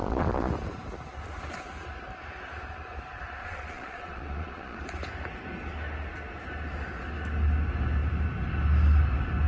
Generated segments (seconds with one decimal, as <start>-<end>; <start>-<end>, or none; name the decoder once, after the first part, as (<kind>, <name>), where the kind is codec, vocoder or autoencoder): 0.0-0.5 (vocoder, Vocos); 3.4-4.8